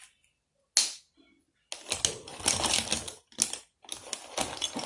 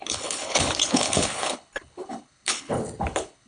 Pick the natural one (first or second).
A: first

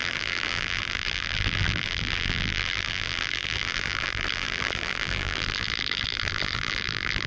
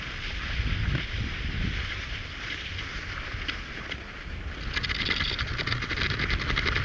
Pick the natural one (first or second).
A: second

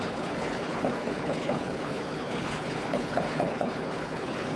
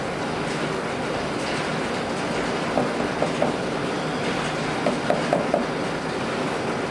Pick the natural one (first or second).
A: second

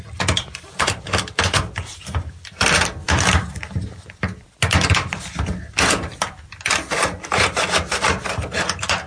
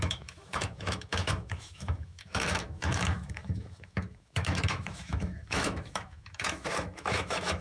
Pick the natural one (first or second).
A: first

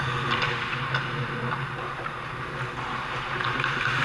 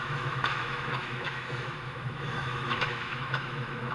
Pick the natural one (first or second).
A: first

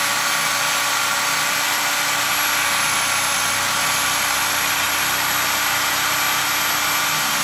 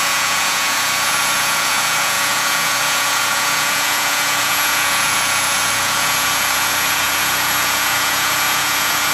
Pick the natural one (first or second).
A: first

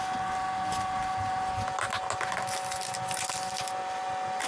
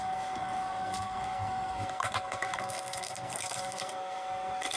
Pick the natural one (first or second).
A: first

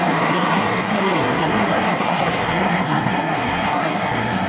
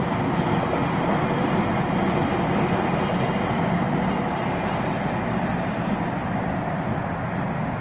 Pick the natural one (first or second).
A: second